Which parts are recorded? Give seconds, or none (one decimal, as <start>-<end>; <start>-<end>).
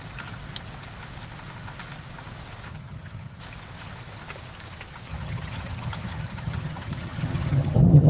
0.0-2.7; 3.4-5.1